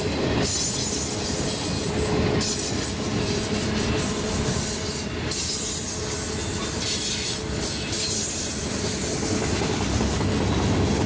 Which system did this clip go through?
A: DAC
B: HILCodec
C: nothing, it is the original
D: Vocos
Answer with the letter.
C